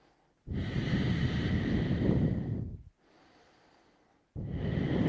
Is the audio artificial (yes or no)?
no